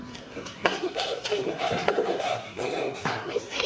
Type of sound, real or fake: fake